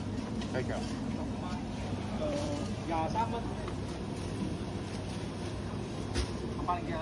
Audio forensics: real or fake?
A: fake